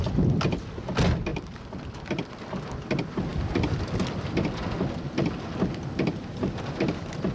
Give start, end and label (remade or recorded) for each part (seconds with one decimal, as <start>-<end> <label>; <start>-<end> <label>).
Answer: 0.0-7.3 recorded

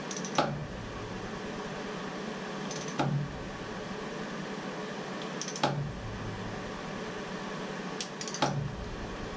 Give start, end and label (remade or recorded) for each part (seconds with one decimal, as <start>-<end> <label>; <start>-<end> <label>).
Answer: 0.0-9.4 recorded

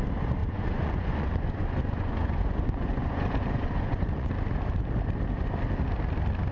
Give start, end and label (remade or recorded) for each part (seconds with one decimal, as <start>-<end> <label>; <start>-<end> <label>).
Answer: 0.0-0.4 recorded; 0.4-4.3 remade; 4.3-6.5 recorded

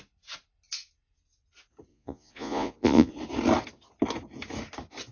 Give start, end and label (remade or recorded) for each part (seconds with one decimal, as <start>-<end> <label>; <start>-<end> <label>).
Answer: 0.0-1.9 recorded; 1.9-3.1 remade; 3.1-5.1 recorded